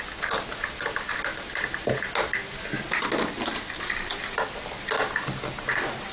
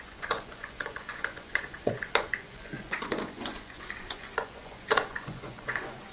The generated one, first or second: second